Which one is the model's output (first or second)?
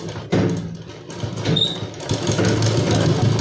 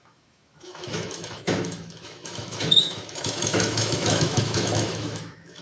second